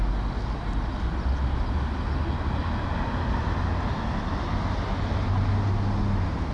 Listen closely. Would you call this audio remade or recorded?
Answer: recorded